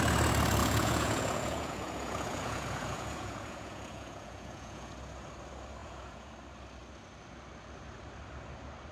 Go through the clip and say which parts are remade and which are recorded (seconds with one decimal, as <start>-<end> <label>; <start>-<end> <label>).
0.0-0.6 recorded; 0.6-4.9 remade; 4.9-5.8 recorded; 5.8-6.3 remade; 6.3-8.9 recorded